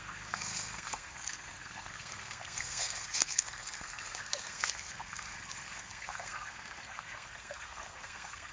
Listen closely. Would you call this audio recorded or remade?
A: remade